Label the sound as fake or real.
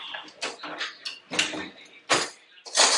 real